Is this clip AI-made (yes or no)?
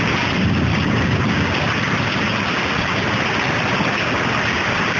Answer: no